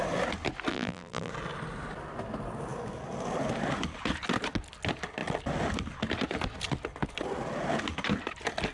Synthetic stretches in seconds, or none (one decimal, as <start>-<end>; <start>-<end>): 0.7-1.3